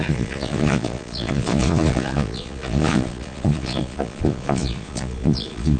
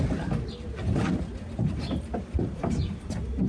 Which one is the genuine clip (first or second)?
second